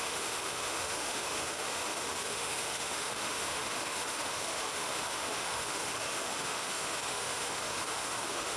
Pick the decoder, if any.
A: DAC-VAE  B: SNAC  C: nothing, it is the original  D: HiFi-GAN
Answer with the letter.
A